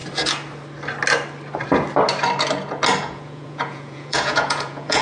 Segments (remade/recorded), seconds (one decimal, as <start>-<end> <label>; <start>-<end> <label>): 0.0-3.0 recorded; 3.0-5.0 remade